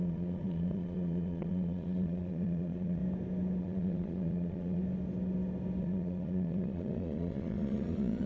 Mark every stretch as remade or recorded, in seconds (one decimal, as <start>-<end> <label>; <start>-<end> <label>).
0.0-3.0 remade; 3.0-3.6 recorded; 3.6-4.8 remade; 4.8-5.8 recorded; 5.8-8.3 remade